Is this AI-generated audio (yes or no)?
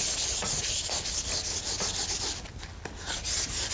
no